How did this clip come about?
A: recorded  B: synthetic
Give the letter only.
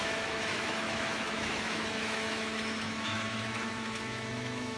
B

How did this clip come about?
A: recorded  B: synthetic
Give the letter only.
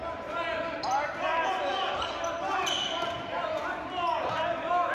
A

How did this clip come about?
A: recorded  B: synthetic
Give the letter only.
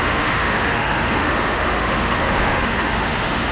B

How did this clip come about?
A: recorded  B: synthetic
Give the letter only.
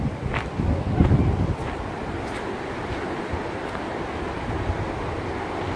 A